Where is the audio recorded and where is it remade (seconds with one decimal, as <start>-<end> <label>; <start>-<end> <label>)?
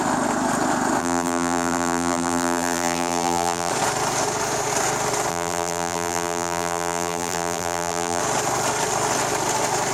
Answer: 0.0-1.0 recorded; 1.0-3.7 remade; 3.7-5.3 recorded; 5.3-8.2 remade; 8.2-9.9 recorded